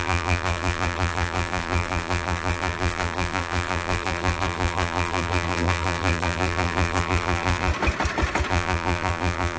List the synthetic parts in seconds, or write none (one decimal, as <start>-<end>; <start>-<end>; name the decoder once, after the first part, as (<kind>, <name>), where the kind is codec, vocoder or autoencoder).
0.0-7.7 (vocoder, BigVGAN v2); 8.5-9.6